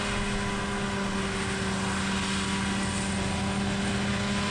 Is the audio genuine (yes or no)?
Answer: yes